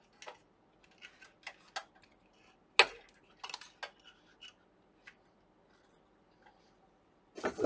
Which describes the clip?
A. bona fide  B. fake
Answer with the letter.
A